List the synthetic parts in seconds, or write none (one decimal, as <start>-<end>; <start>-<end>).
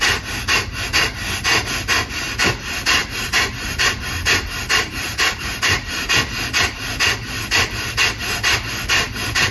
3.0-6.1